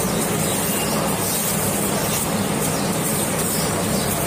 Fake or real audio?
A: real